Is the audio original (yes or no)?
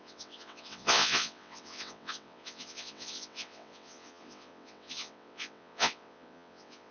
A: no